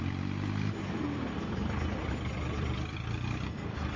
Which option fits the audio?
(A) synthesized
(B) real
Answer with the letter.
A